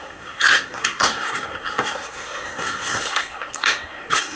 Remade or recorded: remade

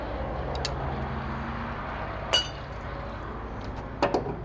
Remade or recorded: recorded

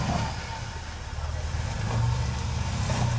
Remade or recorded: recorded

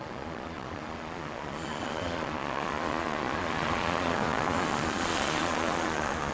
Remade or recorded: remade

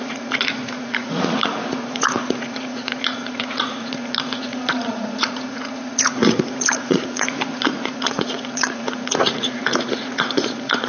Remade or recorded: remade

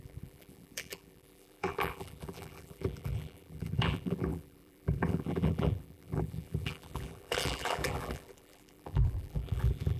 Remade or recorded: remade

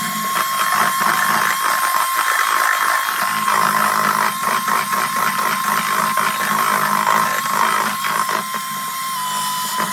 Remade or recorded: recorded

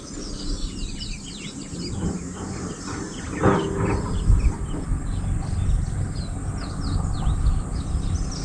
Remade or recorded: recorded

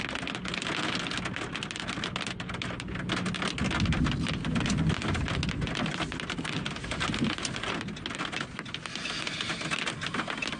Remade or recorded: recorded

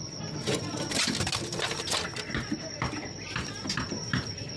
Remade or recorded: recorded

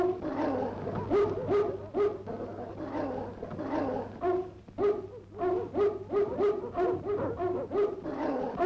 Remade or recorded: recorded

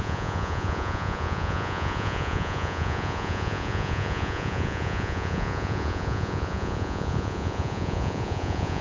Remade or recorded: remade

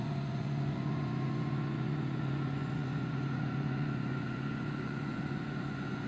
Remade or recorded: remade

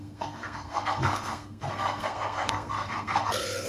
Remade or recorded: remade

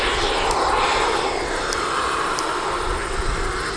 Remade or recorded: recorded